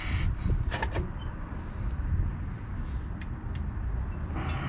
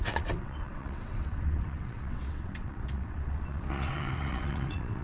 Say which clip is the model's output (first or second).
second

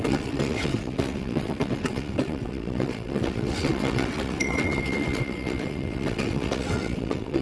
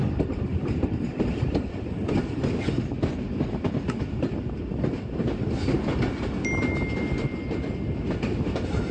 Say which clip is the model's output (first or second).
first